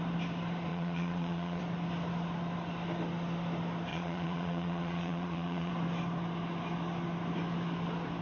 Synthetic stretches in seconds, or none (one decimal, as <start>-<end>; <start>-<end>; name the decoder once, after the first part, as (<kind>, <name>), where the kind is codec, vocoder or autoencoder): 0.7-1.6 (vocoder, Vocos); 3.9-5.7